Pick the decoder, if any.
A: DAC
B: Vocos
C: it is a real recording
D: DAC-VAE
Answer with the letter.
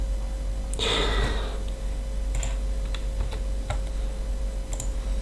C